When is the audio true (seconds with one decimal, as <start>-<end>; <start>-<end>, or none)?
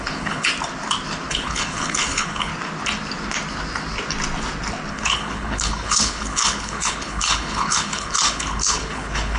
0.5-1.3; 2.5-4.9